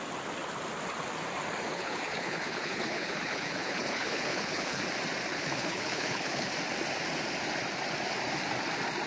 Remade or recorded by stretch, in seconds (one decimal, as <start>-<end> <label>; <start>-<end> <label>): 0.0-1.7 recorded; 1.7-4.8 remade; 4.8-5.3 recorded; 5.3-6.5 remade; 6.5-9.1 recorded

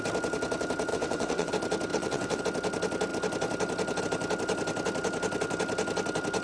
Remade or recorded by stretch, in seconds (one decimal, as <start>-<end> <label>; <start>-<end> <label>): 0.0-0.9 recorded; 0.9-1.5 remade; 1.5-1.9 recorded; 1.9-2.4 remade; 2.4-6.4 recorded